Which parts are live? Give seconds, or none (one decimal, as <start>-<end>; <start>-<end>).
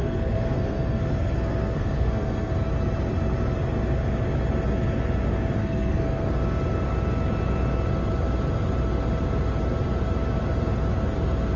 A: 2.5-5.6; 6.3-11.6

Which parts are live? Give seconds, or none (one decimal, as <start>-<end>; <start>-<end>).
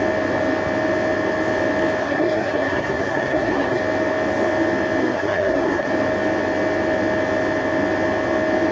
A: 0.0-2.0; 3.8-5.0; 5.9-8.7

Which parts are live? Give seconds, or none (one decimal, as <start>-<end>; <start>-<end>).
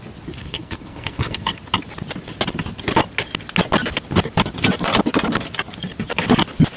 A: 0.0-0.4; 1.6-6.8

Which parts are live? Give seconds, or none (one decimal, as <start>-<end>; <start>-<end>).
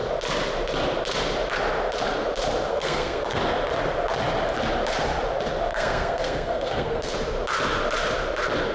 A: 0.0-2.7; 3.4-5.7; 7.1-8.7